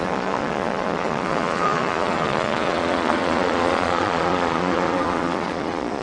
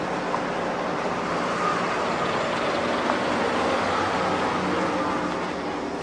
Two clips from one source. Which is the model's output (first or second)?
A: first